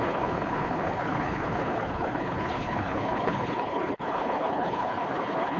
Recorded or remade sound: remade